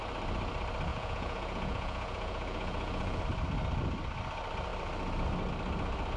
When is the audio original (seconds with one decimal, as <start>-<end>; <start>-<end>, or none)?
0.0-0.9; 3.2-6.2